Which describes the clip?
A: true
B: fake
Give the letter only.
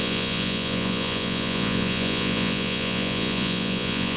B